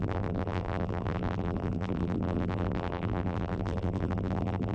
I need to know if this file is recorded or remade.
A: remade